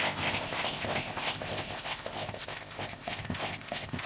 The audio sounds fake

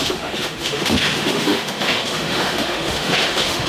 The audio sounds fake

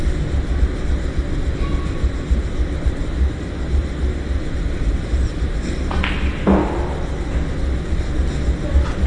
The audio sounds real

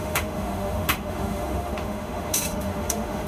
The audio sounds fake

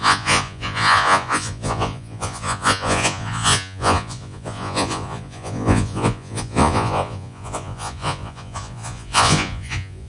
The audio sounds fake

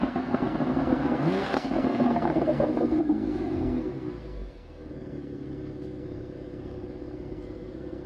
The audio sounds fake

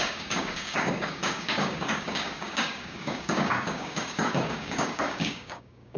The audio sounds fake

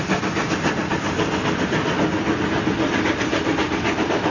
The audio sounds real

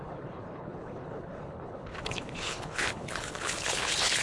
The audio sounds fake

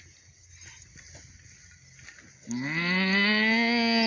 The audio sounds real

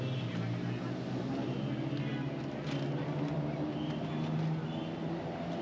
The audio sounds real